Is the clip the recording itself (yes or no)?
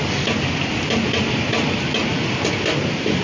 yes